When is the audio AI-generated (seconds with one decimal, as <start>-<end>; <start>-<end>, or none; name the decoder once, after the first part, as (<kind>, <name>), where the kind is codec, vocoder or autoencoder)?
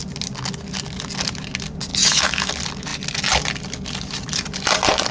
1.9-2.5 (autoencoder, DAC-VAE)